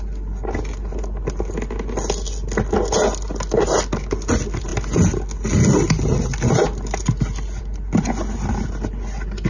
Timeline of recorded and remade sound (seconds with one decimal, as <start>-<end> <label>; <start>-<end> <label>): 0.0-9.5 recorded